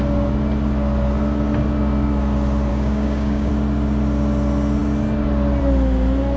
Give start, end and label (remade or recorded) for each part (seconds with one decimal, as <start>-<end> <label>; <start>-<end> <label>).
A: 0.0-2.7 recorded; 2.7-3.5 remade; 3.5-6.4 recorded